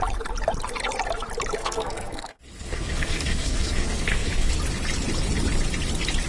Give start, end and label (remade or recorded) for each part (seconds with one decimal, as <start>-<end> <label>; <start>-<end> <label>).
0.0-1.6 recorded; 1.6-4.5 remade; 4.5-6.3 recorded